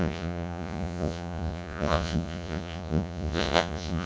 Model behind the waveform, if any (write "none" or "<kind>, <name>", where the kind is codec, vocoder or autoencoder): vocoder, Vocos